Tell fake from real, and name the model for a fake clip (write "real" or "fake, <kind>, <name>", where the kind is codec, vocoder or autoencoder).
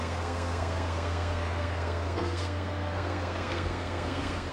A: fake, codec, SNAC